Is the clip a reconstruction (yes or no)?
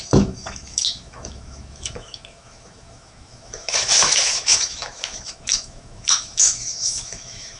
yes